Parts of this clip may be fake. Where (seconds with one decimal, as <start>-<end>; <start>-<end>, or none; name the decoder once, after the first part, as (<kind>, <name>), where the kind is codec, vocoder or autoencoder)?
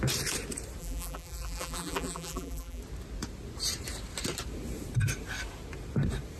0.8-2.8 (vocoder, BigVGAN v2)